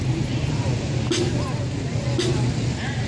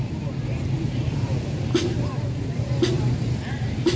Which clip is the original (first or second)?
first